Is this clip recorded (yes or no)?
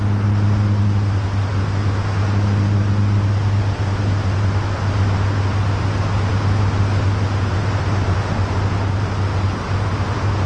yes